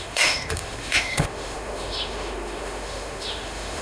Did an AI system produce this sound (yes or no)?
yes